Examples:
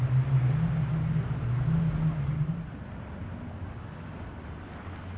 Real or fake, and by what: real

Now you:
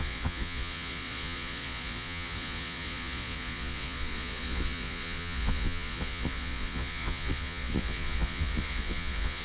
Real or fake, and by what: fake, vocoder, Vocos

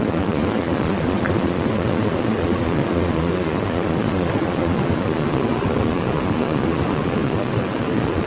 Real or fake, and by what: fake, vocoder, Vocos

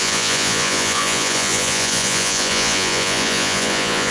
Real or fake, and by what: fake, vocoder, Vocos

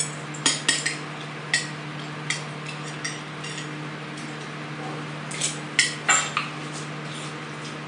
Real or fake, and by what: real